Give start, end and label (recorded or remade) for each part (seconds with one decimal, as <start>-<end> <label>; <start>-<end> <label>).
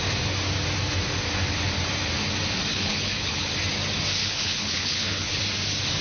0.0-2.7 recorded; 2.7-3.5 remade; 3.5-4.2 recorded; 4.2-5.4 remade; 5.4-6.0 recorded